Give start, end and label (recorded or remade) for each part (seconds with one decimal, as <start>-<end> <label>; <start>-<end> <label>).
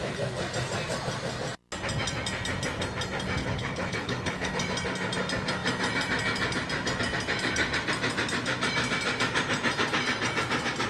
0.0-3.4 recorded; 3.4-4.5 remade; 4.5-10.9 recorded